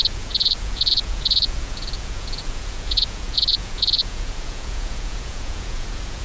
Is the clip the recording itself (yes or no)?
no